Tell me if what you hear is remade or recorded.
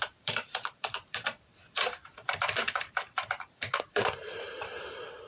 remade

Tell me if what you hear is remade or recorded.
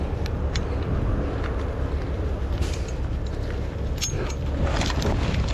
recorded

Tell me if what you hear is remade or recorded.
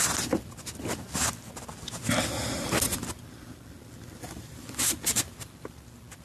recorded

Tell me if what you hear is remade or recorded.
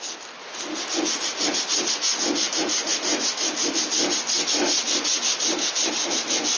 recorded